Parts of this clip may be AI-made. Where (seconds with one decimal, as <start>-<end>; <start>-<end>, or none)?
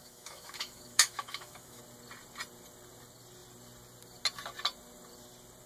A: 0.0-1.8